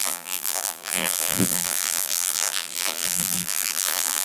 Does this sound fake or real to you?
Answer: fake